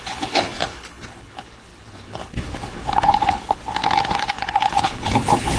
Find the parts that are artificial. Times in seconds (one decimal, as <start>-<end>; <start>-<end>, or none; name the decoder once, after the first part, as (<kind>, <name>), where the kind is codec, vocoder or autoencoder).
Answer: 0.0-3.6 (codec, HILCodec); 4.2-5.6